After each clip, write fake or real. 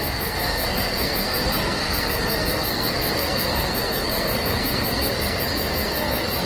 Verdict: fake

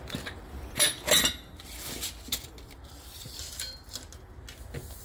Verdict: real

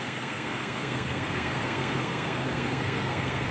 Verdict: fake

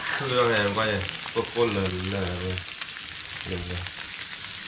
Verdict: real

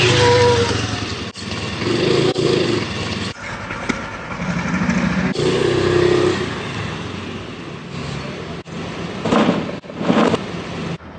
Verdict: real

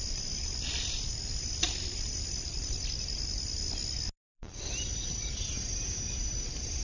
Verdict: real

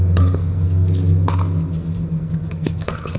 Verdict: fake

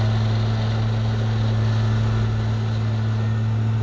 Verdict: real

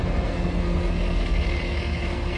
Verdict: fake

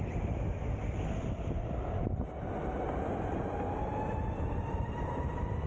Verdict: real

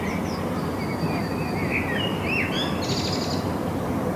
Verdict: real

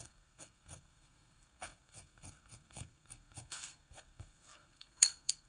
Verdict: fake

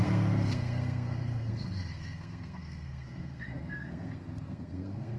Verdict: fake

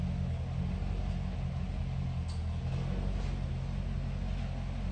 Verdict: real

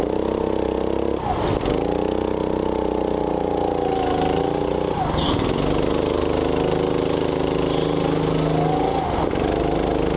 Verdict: real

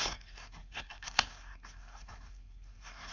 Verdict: fake